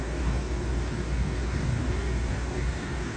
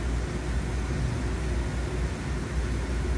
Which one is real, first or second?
second